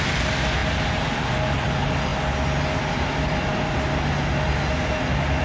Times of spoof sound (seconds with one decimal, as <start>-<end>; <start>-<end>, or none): none